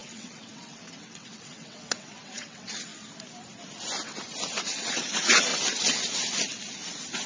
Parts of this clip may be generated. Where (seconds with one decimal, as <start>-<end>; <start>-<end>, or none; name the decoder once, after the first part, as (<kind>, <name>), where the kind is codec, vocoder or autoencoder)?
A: 0.0-2.9 (vocoder, WaveNeXt); 4.6-5.5